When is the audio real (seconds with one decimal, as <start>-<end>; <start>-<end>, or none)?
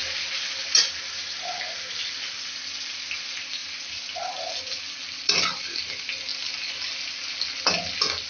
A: 0.0-8.3